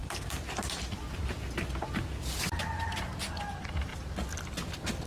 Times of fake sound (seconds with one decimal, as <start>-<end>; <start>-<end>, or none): 3.9-5.1